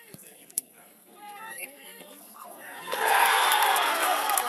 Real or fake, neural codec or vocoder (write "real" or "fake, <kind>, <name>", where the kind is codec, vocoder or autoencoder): fake, codec, SNAC